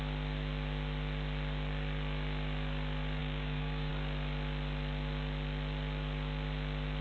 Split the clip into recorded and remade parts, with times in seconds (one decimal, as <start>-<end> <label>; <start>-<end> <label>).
0.0-3.2 recorded; 3.2-3.9 remade; 3.9-7.0 recorded